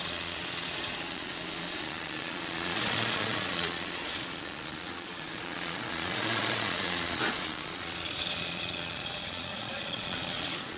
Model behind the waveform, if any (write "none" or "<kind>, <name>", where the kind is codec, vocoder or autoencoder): vocoder, Vocos